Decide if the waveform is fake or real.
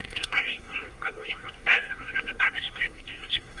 fake